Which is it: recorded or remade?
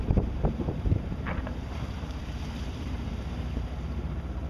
remade